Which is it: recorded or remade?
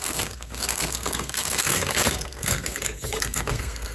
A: remade